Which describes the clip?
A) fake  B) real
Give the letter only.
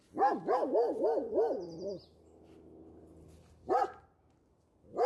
B